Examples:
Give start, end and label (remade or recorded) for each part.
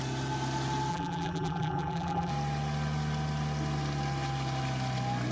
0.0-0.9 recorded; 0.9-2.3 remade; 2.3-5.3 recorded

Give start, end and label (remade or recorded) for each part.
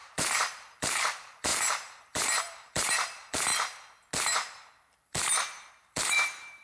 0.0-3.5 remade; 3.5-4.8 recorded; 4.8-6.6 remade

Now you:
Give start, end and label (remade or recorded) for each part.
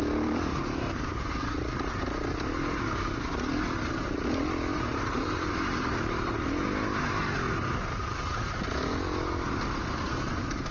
0.0-0.5 recorded; 0.5-1.3 remade; 1.3-4.7 recorded; 4.7-6.3 remade; 6.3-10.7 recorded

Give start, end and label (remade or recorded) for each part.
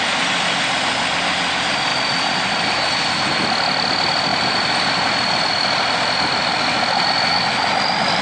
0.0-8.2 recorded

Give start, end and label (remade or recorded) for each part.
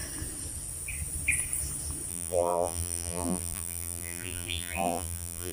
0.0-2.1 recorded; 2.1-5.5 remade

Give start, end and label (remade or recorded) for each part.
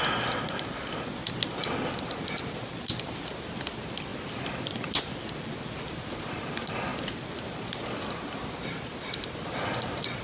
0.0-10.2 recorded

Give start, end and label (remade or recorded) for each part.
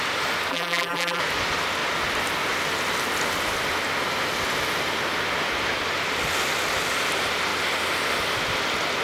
0.0-0.5 recorded; 0.5-1.2 remade; 1.2-9.0 recorded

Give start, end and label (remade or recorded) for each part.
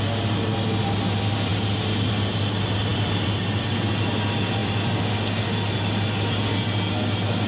0.0-2.9 recorded; 2.9-3.9 remade; 3.9-4.6 recorded; 4.6-5.1 remade; 5.1-7.5 recorded